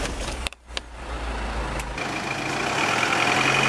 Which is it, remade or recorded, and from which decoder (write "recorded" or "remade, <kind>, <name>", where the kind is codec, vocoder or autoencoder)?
recorded